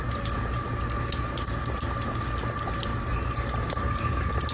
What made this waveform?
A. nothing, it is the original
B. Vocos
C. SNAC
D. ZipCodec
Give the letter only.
A